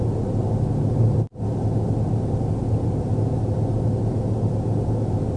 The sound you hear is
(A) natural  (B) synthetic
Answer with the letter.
A